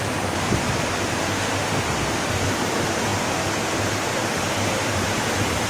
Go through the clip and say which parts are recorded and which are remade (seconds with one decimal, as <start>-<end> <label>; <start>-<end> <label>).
0.0-1.2 recorded; 1.2-1.9 remade; 1.9-5.7 recorded